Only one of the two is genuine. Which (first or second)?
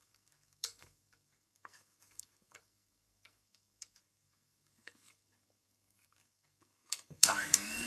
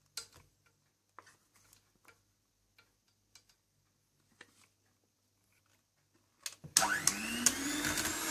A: second